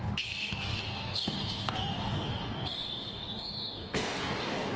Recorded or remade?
remade